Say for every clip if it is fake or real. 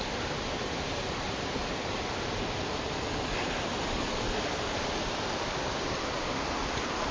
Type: real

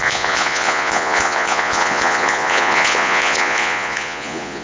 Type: fake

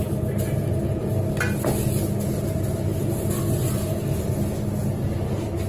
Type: real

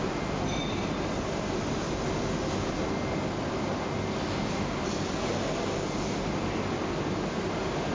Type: real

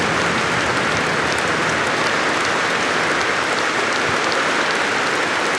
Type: real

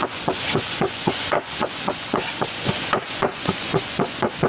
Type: fake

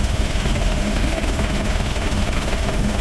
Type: fake